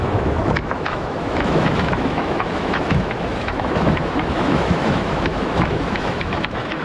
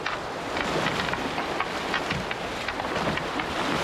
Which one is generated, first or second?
first